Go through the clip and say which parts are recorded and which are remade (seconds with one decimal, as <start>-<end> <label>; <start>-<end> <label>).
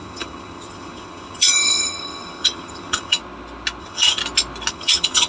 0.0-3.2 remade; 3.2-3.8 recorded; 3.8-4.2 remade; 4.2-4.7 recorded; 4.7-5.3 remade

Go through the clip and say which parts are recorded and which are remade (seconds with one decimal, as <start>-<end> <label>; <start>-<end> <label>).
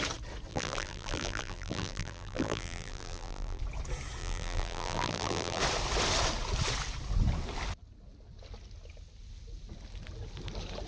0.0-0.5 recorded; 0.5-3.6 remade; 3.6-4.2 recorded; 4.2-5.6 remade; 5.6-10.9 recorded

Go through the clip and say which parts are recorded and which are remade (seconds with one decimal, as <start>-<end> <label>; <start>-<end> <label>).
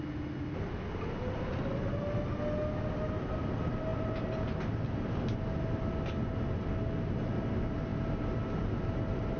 0.0-9.4 recorded